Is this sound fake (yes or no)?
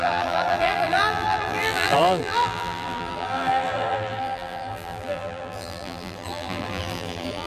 yes